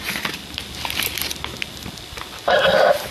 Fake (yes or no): no